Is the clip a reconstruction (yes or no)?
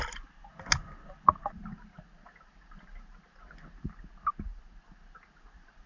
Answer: no